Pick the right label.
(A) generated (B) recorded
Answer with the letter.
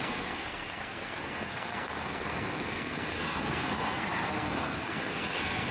A